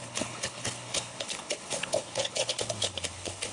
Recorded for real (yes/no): no